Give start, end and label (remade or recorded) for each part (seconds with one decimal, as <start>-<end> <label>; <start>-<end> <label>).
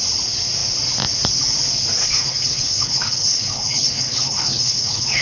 0.0-2.0 recorded; 2.0-5.2 remade